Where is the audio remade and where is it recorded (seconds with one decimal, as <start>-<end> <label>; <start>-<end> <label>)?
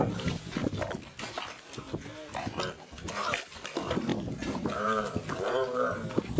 0.0-4.1 recorded; 4.1-5.2 remade; 5.2-6.4 recorded